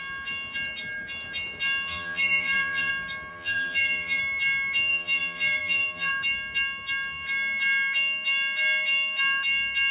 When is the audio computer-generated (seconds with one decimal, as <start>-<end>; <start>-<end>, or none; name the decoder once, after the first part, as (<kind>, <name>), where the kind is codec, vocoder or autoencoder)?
1.9-2.9 (vocoder, BigVGAN v2); 3.3-4.2; 4.9-6.1